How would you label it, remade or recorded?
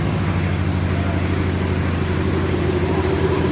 recorded